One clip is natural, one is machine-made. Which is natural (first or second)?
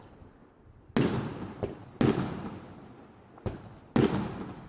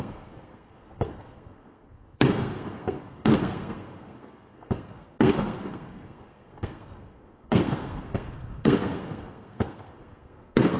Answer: first